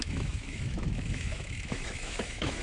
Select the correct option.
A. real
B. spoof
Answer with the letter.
B